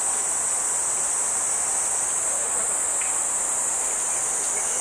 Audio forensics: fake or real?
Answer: real